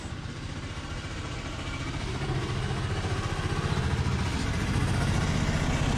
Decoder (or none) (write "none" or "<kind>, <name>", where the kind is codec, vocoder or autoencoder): vocoder, BigVGAN v2